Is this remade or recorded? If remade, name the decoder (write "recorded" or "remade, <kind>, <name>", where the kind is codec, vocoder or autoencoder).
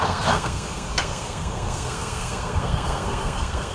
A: remade, codec, SNAC